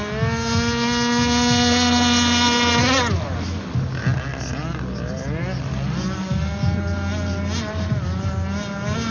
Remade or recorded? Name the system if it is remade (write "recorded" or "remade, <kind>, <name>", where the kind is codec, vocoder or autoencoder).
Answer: recorded